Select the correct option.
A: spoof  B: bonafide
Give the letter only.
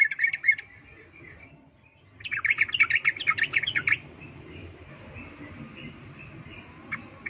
B